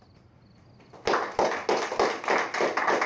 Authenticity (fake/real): real